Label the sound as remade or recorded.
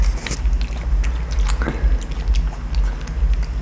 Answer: recorded